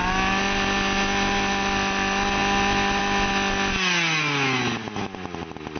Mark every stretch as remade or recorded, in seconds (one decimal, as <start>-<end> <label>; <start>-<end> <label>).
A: 0.0-5.8 recorded